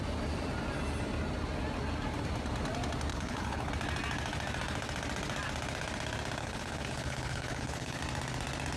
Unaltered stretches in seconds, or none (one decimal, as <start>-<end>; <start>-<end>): 0.0-3.1; 3.7-6.4; 8.0-8.8